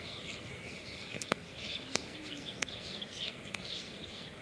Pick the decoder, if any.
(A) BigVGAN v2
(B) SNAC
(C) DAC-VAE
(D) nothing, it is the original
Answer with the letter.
B